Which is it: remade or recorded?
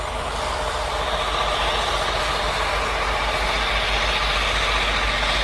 recorded